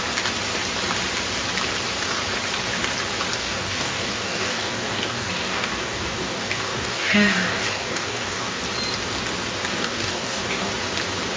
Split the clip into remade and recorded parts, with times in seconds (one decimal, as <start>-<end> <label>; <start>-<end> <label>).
0.0-3.4 recorded; 3.4-8.6 remade; 8.6-9.7 recorded; 9.7-10.7 remade; 10.7-11.4 recorded